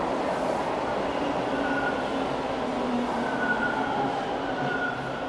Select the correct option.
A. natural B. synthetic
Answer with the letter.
A